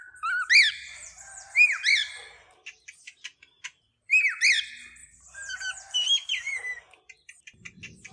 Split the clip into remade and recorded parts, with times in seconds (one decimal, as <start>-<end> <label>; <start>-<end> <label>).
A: 0.0-0.7 recorded; 0.7-1.8 remade; 1.8-5.0 recorded; 5.0-7.0 remade; 7.0-8.1 recorded